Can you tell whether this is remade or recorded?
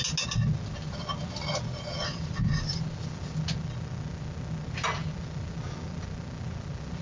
recorded